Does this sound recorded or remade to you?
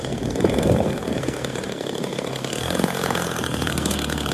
remade